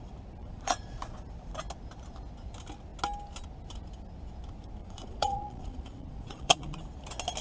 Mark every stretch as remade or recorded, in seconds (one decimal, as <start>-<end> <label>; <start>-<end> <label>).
0.0-0.4 recorded; 0.4-1.2 remade; 1.2-4.8 recorded; 4.8-6.8 remade; 6.8-7.4 recorded

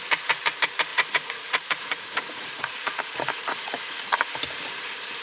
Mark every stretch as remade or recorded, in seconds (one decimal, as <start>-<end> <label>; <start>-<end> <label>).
0.0-0.9 recorded; 0.9-4.0 remade; 4.0-5.2 recorded